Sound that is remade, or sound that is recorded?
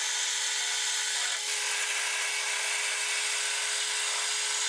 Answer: recorded